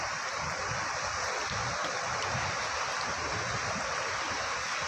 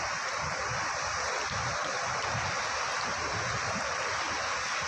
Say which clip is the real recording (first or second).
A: second